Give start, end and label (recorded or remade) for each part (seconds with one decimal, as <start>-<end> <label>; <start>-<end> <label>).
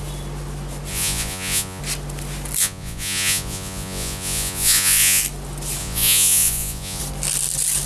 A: 0.0-0.9 recorded; 0.9-1.8 remade; 1.8-2.6 recorded; 2.6-5.2 remade; 5.2-5.8 recorded; 5.8-7.0 remade; 7.0-7.9 recorded